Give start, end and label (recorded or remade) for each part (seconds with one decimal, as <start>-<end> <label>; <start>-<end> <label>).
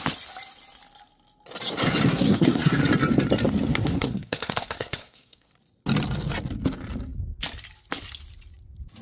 0.0-2.1 recorded; 2.1-2.8 remade; 2.8-3.7 recorded; 3.7-5.5 remade; 5.5-9.0 recorded